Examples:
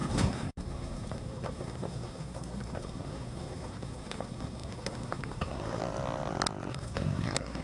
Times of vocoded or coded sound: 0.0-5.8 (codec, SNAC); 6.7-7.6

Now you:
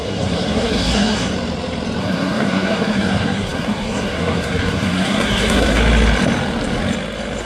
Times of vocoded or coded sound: 0.0-1.3 (codec, SNAC); 2.0-5.8

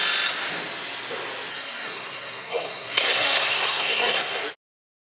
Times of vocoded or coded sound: 1.5-4.4 (codec, SNAC)

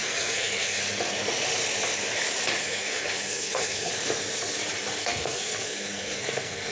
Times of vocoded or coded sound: 0.0-0.8 (codec, SNAC); 2.6-3.9; 5.0-6.7

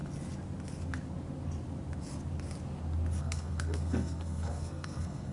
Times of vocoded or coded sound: 3.2-5.3 (codec, SNAC)

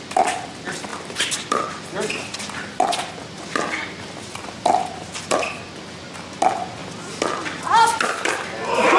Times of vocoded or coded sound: none